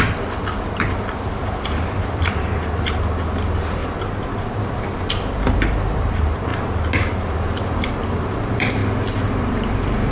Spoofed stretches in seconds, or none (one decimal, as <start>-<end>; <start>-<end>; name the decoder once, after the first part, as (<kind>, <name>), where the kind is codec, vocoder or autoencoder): 0.0-3.8 (vocoder, BigVGAN v2); 4.4-6.5; 7.1-10.1